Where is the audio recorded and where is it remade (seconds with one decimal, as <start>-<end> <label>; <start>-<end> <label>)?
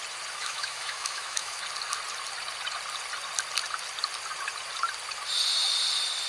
0.0-0.4 recorded; 0.4-1.6 remade; 1.6-6.3 recorded